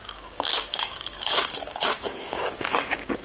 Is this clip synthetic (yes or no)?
yes